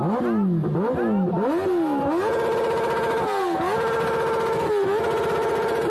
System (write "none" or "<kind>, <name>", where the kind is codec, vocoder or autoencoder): none